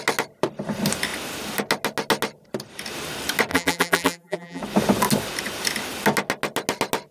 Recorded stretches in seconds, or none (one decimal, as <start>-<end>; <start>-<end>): 0.0-3.5; 4.6-7.1